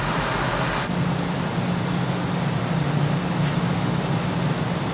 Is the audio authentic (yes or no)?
yes